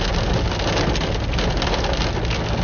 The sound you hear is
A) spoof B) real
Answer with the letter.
B